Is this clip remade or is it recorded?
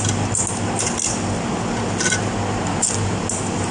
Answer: recorded